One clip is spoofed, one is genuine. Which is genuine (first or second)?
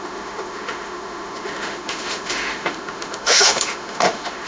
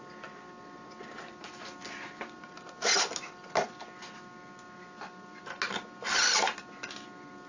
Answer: second